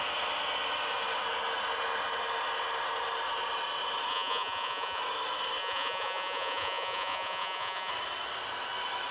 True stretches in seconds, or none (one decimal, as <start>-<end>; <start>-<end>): 0.0-4.1; 5.0-5.6; 7.9-9.1